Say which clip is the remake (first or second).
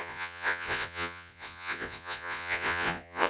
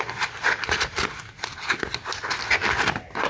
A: first